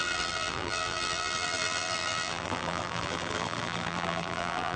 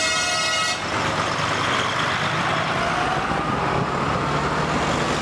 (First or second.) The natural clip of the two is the second